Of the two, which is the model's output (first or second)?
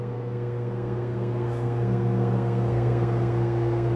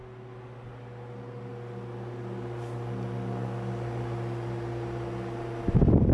first